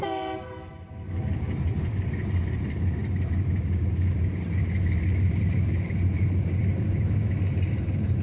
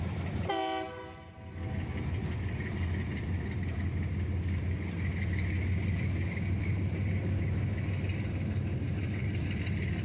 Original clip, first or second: second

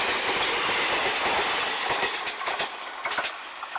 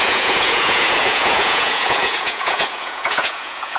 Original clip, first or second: first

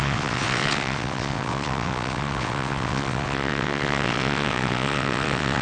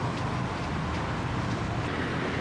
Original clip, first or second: second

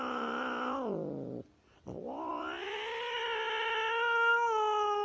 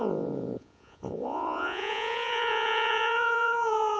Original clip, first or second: first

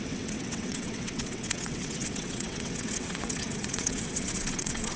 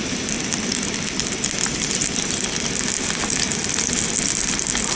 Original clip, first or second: second